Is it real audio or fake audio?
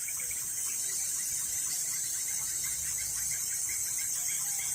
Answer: real